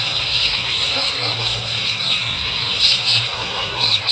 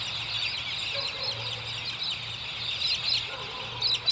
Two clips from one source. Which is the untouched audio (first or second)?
second